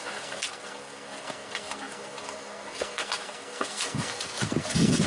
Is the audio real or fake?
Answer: fake